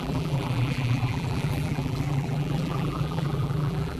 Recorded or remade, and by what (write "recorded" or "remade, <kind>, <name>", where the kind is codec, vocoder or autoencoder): remade, vocoder, BigVGAN v2